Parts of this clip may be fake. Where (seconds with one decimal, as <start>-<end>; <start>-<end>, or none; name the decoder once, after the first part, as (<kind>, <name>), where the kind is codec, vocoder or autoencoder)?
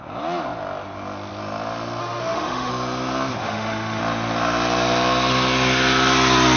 2.0-2.7 (autoencoder, DAC-VAE); 3.4-4.0